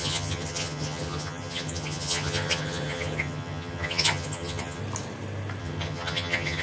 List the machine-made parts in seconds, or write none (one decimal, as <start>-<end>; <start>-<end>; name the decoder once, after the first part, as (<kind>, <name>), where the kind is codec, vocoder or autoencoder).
0.0-4.8 (vocoder, HiFi-GAN); 5.6-6.6